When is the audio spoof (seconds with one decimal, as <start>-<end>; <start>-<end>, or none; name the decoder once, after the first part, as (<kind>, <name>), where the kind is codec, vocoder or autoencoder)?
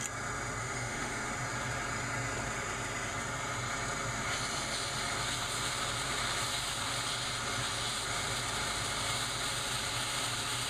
0.6-1.3 (autoencoder, DAC-VAE)